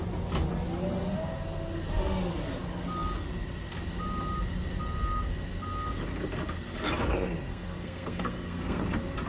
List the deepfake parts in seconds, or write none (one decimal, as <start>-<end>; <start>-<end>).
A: 7.5-8.8